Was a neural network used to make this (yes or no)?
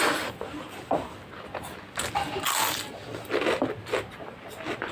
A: no